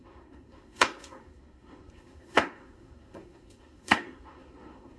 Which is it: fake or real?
fake